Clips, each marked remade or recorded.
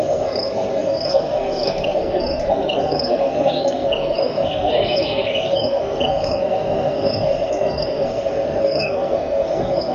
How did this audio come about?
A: remade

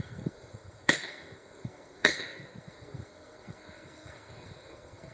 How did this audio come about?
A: remade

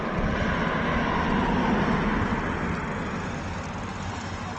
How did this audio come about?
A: recorded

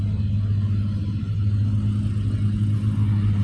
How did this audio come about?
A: recorded